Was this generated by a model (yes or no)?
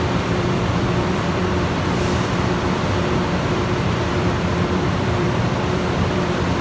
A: yes